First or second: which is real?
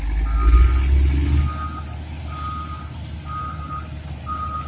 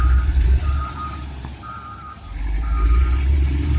first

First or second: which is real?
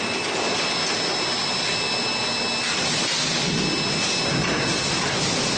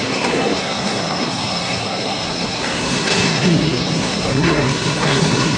first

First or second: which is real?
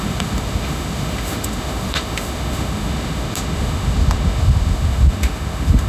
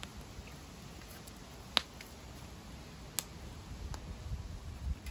second